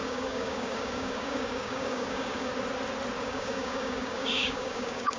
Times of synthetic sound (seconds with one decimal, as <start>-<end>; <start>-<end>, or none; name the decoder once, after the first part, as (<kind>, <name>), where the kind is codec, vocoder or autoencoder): 0.0-2.5 (codec, DAC); 3.2-5.2

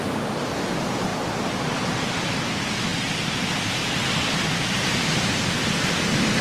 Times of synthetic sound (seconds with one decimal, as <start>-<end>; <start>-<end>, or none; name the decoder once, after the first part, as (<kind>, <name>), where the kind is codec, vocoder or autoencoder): none